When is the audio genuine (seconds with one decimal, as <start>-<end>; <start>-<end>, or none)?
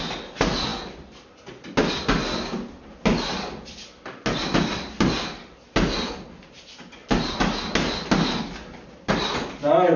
0.0-10.0